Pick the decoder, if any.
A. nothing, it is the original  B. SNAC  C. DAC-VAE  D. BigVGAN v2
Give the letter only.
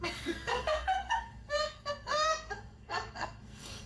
B